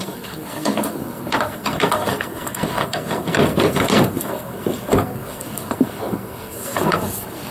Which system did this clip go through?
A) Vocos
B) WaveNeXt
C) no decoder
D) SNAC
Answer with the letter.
D